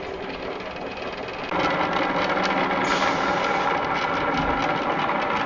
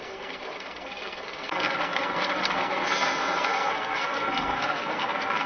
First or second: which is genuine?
first